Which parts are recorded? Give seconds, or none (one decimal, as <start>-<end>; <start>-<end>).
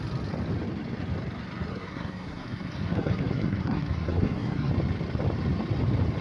0.0-1.7; 4.7-6.2